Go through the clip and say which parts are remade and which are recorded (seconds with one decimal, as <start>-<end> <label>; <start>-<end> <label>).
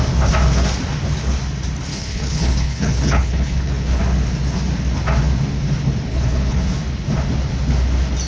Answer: 0.0-1.9 recorded; 1.9-4.0 remade; 4.0-6.1 recorded; 6.1-6.6 remade; 6.6-8.3 recorded